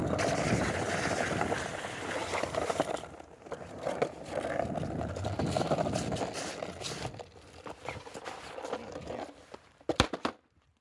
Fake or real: real